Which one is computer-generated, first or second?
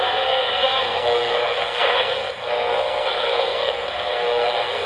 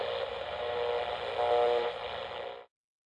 first